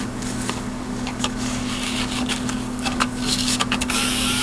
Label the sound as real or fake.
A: fake